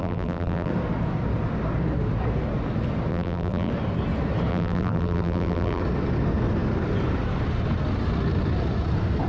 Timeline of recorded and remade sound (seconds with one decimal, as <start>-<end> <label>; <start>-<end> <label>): 0.0-0.7 remade; 0.7-3.1 recorded; 3.1-3.7 remade; 3.7-4.5 recorded; 4.5-5.8 remade; 5.8-9.3 recorded